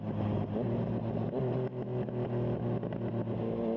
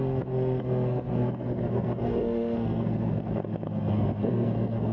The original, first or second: first